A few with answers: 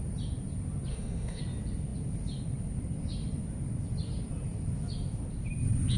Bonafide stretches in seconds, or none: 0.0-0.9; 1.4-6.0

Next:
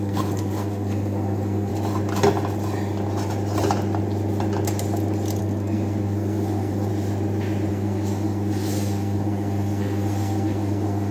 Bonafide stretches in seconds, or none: 1.7-5.4; 6.9-7.7

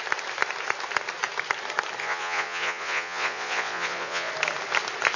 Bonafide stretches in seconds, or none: 0.0-2.0; 4.3-5.2

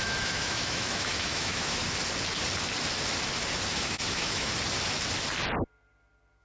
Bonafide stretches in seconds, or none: 1.8-3.7; 4.5-6.4

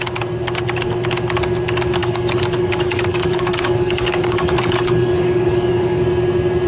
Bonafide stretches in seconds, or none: 0.0-2.0; 6.0-6.7